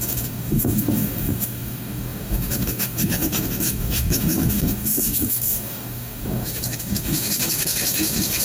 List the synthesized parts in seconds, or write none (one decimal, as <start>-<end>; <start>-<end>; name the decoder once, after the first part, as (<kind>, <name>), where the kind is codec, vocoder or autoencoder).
0.0-8.4 (codec, DAC)